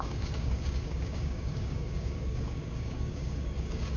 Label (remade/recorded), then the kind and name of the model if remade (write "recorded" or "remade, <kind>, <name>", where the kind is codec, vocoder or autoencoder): remade, codec, DAC